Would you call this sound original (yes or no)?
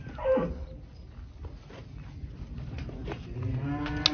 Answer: yes